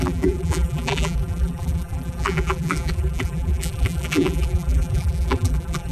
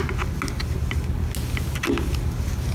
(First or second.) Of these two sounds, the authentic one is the second